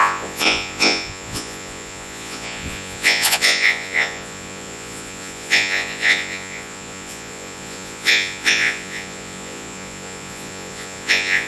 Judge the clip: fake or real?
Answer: fake